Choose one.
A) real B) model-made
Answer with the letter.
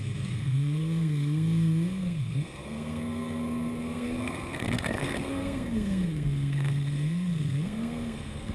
B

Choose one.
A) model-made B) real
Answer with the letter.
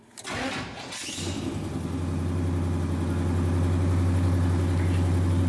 B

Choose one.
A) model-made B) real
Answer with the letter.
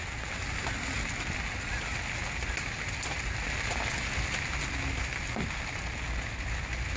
B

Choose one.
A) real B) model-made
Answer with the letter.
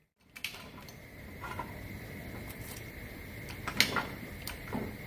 A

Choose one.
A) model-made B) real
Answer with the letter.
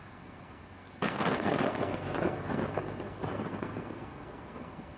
A